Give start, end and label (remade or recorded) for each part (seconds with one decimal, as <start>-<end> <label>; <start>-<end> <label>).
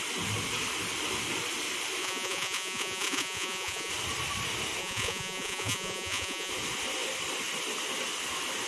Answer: 0.0-2.0 recorded; 2.0-3.9 remade; 3.9-4.8 recorded; 4.8-6.5 remade; 6.5-8.7 recorded